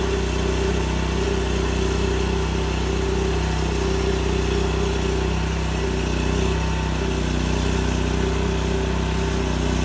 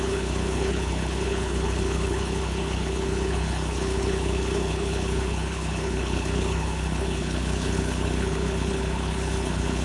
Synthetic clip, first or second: second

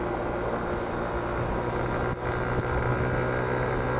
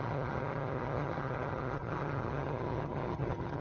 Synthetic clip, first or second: second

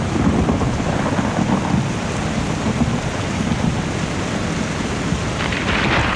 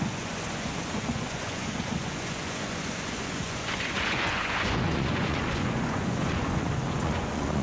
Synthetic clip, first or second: second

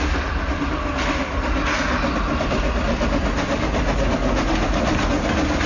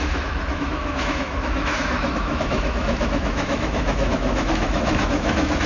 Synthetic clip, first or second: second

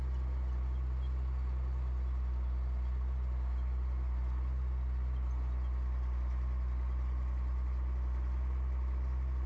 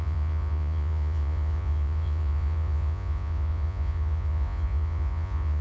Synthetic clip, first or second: second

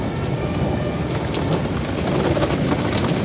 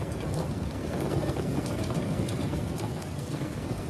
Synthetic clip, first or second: second